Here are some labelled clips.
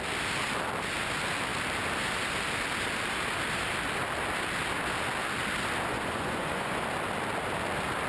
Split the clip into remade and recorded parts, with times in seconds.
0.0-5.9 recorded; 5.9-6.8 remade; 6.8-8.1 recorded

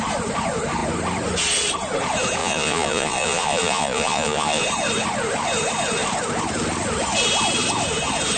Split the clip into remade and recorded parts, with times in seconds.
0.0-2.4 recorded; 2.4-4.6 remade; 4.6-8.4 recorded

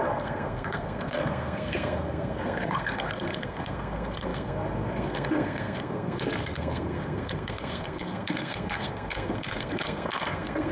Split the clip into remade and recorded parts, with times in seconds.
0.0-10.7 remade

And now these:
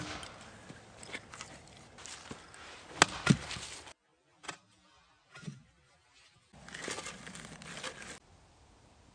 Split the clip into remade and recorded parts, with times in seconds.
0.0-4.1 recorded; 4.1-5.9 remade; 5.9-9.1 recorded